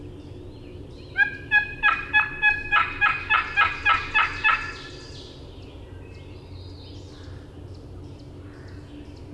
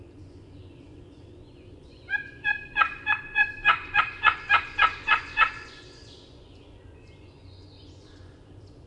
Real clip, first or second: first